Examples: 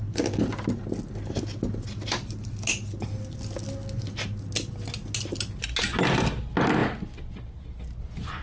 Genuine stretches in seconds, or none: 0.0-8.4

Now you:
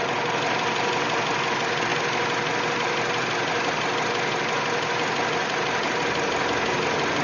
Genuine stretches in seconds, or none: 0.0-7.2